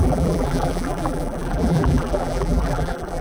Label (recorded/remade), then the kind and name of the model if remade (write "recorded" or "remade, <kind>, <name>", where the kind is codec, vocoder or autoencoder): remade, vocoder, BigVGAN v2